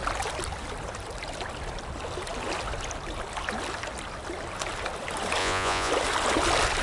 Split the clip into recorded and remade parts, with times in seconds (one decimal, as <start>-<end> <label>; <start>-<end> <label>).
0.0-5.4 recorded; 5.4-5.9 remade; 5.9-6.8 recorded